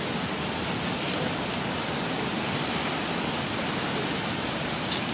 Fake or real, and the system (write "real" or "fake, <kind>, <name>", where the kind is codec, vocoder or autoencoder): real